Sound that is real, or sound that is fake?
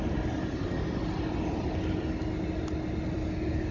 real